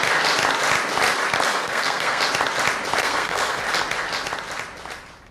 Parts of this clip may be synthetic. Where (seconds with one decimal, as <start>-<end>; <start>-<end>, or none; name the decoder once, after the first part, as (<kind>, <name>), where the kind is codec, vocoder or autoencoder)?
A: 1.5-2.2 (codec, SNAC); 3.0-3.6